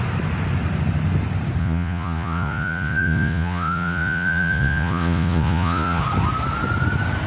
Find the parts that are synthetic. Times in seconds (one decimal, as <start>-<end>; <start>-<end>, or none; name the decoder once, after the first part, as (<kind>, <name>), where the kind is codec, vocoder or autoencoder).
1.6-6.0 (vocoder, Vocos)